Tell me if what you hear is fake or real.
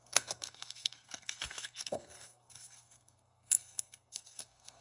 fake